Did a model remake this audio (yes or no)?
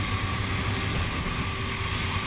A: no